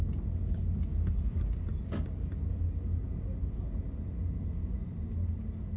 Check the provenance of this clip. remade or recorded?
recorded